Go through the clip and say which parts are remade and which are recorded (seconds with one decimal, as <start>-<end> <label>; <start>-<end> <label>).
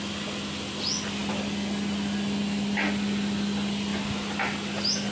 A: 0.0-5.1 recorded